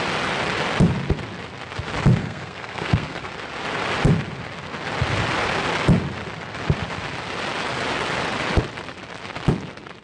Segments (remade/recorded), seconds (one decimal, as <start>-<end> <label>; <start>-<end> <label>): 0.0-2.2 recorded; 2.2-3.3 remade; 3.3-10.0 recorded